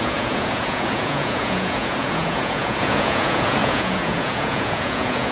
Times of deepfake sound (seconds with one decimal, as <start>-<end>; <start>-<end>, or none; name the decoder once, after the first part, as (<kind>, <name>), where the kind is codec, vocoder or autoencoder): 0.0-5.3 (vocoder, Vocos)